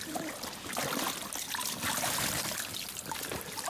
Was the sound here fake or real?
real